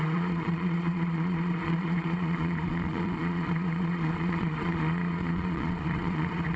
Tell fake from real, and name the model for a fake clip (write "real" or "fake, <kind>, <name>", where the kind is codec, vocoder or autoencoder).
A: fake, vocoder, Vocos